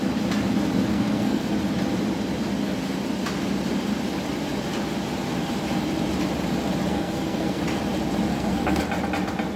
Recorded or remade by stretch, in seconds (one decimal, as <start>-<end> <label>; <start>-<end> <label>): 0.0-0.9 recorded; 0.9-1.5 remade; 1.5-6.9 recorded; 6.9-7.6 remade; 7.6-8.3 recorded; 8.3-8.8 remade; 8.8-9.6 recorded